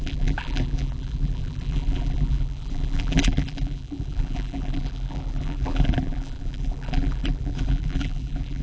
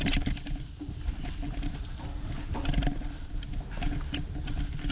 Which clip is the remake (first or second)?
first